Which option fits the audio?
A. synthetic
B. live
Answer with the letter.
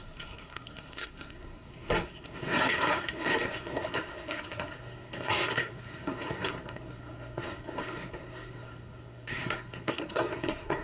A